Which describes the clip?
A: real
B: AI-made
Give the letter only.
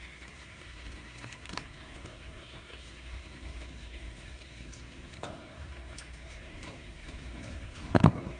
B